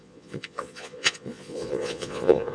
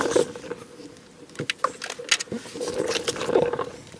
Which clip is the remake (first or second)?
first